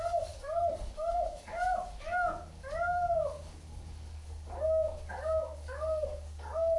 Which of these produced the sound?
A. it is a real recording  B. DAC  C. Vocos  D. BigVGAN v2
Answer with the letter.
B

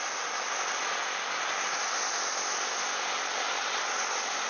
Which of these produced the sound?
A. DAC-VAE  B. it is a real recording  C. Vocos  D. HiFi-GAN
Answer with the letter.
B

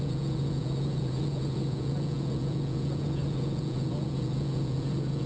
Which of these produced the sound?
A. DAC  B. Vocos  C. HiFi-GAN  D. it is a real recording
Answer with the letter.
B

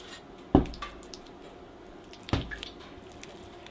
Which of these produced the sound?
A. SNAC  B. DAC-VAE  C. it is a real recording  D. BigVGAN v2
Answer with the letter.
C